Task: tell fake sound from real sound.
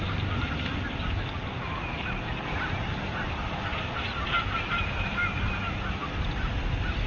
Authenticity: real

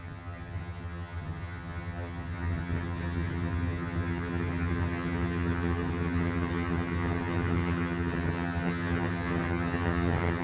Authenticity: fake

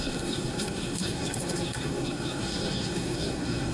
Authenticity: fake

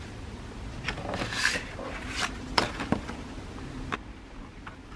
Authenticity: real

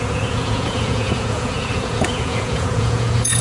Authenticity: fake